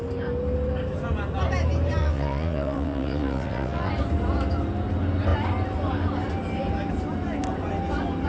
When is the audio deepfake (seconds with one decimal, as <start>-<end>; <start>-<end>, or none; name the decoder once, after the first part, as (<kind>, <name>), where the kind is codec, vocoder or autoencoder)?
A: 2.0-3.9 (vocoder, WaveNeXt)